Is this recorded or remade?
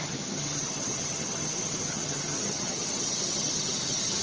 remade